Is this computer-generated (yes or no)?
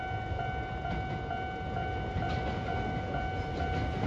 no